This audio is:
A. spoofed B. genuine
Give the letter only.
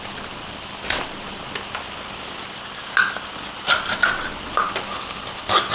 B